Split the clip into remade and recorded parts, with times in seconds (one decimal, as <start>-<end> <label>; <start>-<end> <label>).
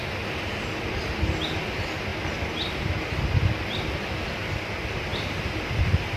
0.0-6.2 recorded